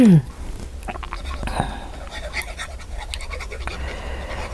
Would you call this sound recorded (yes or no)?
yes